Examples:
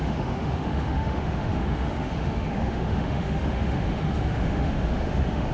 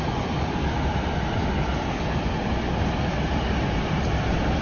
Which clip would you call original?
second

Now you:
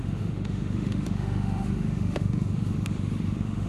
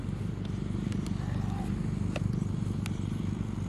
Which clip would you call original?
second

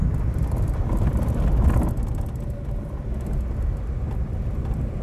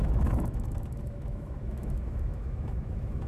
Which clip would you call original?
first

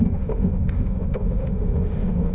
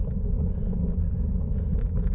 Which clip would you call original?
second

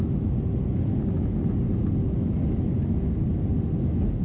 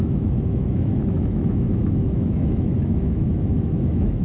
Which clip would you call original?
first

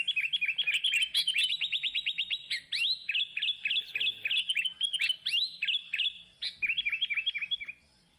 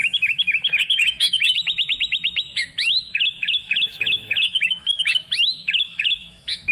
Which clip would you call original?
first